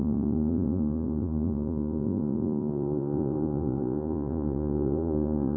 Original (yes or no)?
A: no